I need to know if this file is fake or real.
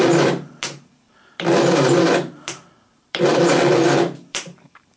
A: fake